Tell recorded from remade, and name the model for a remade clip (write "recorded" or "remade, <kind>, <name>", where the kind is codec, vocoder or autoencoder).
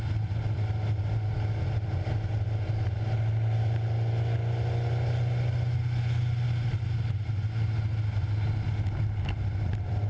recorded